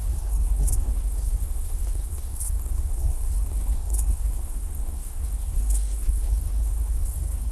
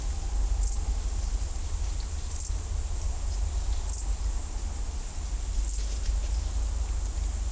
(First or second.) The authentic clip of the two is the second